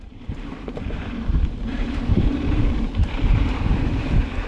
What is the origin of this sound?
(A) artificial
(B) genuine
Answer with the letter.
A